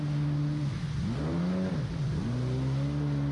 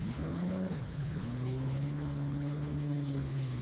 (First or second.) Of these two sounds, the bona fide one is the first